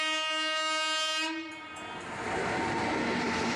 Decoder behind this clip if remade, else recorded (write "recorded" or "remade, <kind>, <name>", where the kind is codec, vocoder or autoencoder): recorded